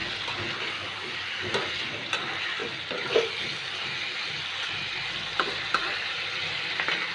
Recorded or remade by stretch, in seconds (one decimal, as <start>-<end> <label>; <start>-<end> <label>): 0.0-7.1 recorded